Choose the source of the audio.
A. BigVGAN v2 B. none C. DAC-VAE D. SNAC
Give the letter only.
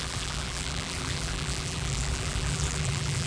A